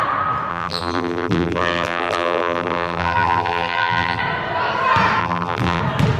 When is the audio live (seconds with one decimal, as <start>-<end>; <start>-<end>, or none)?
0.0-0.5; 4.2-5.2; 5.8-6.2

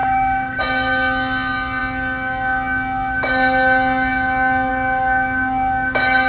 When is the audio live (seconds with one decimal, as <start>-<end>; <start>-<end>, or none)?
0.6-6.3

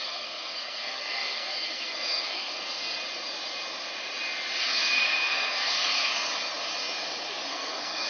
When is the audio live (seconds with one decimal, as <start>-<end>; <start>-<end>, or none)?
3.0-4.6; 6.3-7.5

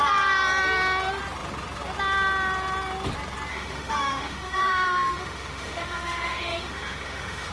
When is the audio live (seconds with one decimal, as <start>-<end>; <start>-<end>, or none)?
0.0-3.5

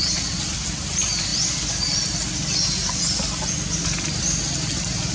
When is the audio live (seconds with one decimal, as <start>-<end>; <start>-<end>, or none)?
0.0-5.1

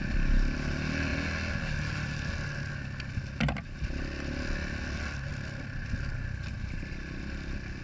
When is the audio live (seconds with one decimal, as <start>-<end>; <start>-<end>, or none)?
0.0-7.8